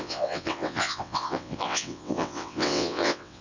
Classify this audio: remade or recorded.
remade